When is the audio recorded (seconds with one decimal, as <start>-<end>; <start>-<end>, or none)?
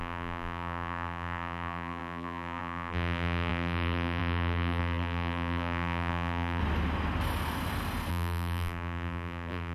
6.6-8.1